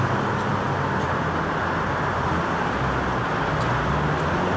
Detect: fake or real real